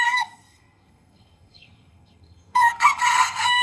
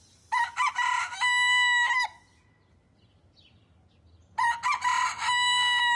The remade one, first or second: first